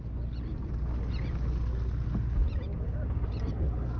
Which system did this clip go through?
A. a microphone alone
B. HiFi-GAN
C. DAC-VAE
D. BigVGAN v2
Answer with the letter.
A